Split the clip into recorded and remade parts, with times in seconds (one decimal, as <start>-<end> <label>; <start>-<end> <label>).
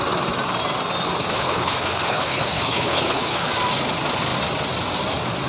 0.0-1.3 recorded; 1.3-3.5 remade; 3.5-5.5 recorded